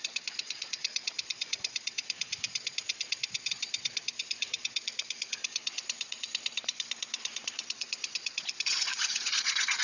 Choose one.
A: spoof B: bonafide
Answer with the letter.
A